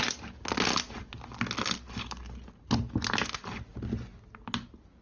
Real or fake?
real